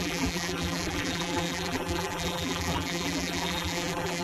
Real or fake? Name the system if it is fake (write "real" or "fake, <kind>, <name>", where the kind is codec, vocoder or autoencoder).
fake, vocoder, BigVGAN v2